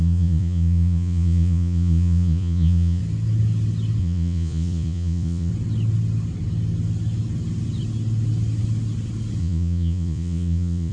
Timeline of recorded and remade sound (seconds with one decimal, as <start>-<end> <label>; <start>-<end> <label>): 0.0-3.0 remade; 3.0-4.0 recorded; 4.0-5.5 remade; 5.5-9.4 recorded; 9.4-10.9 remade